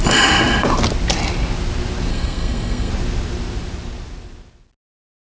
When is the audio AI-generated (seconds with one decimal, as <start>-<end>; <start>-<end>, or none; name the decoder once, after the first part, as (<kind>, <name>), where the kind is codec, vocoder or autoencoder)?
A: 2.1-2.9 (codec, SNAC)